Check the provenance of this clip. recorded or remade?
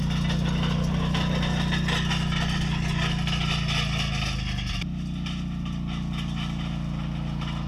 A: recorded